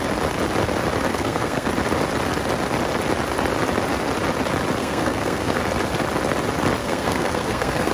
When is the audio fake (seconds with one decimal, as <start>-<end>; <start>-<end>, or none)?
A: 1.1-1.7; 4.8-5.6; 6.8-7.9